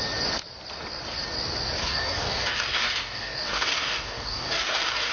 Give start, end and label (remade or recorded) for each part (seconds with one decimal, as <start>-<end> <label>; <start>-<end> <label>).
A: 0.0-1.8 recorded; 1.8-5.1 remade